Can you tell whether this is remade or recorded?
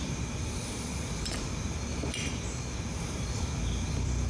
remade